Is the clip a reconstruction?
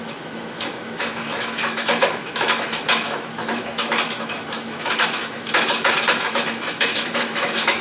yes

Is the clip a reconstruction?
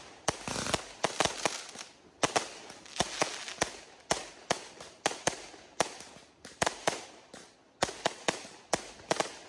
no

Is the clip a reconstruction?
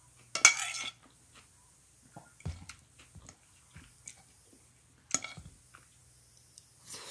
no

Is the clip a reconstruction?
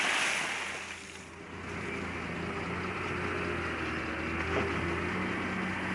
no